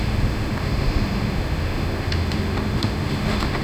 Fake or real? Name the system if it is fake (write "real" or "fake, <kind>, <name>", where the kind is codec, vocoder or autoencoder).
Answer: fake, autoencoder, DAC-VAE